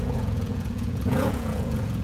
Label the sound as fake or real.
fake